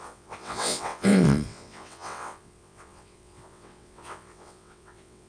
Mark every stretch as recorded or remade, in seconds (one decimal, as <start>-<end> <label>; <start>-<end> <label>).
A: 0.0-5.3 remade